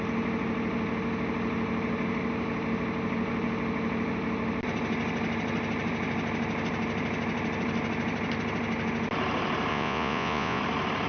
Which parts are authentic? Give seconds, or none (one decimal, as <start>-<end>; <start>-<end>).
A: 0.0-9.7; 10.6-11.1